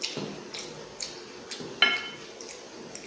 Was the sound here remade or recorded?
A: recorded